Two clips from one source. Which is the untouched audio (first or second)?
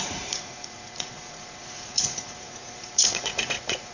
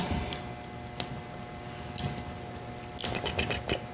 second